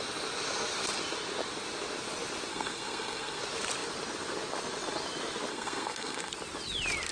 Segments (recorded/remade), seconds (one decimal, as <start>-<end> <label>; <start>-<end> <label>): 0.0-2.5 recorded; 2.5-3.4 remade; 3.4-5.5 recorded; 5.5-6.3 remade; 6.3-7.1 recorded